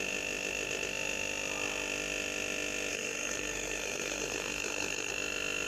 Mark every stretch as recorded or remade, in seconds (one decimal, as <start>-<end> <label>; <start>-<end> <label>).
0.0-2.9 recorded; 2.9-5.1 remade; 5.1-5.7 recorded